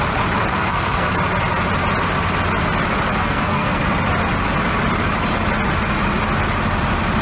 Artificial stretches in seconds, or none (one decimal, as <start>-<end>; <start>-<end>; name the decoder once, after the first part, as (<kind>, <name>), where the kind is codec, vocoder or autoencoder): 0.5-1.1 (codec, SNAC); 3.2-3.8